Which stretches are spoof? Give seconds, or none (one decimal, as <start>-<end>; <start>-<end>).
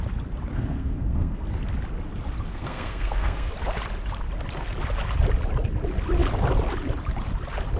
0.5-1.6; 2.5-3.5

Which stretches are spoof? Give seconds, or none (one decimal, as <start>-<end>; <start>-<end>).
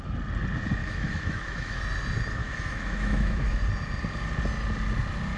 0.8-1.8; 2.4-3.6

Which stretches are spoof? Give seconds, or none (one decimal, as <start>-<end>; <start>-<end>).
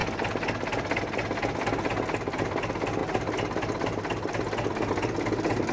none